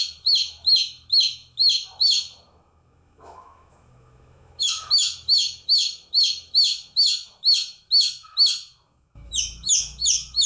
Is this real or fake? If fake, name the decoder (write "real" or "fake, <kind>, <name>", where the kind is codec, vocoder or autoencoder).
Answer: fake, autoencoder, DAC-VAE